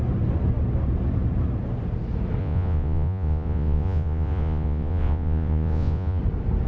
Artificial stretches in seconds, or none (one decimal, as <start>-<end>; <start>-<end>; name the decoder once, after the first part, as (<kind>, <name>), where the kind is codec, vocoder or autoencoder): 2.4-6.2 (vocoder, Vocos)